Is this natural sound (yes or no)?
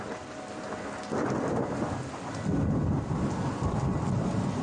yes